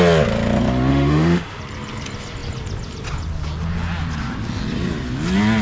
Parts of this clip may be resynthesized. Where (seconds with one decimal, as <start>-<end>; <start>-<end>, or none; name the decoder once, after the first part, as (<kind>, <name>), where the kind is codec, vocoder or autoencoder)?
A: 0.9-1.6 (autoencoder, DAC-VAE)